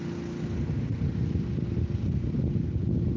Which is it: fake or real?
real